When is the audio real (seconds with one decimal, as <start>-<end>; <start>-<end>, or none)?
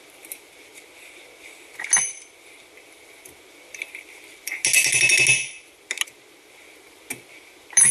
0.0-7.9